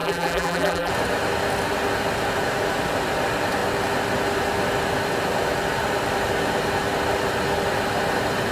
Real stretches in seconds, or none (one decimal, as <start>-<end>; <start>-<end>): 0.9-8.5